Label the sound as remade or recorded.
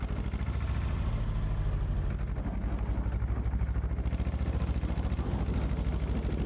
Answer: recorded